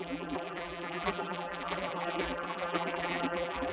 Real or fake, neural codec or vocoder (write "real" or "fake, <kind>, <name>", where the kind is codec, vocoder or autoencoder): fake, vocoder, BigVGAN v2